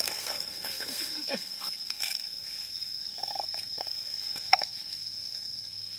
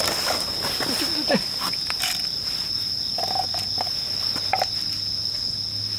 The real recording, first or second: second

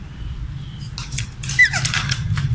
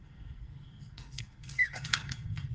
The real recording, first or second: first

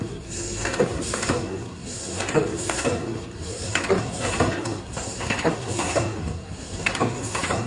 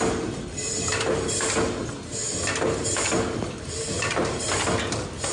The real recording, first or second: second